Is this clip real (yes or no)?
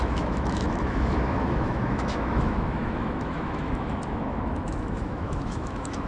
no